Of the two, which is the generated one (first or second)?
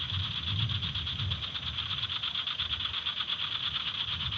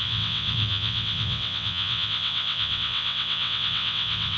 second